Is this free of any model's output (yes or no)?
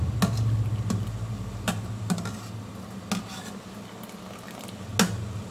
yes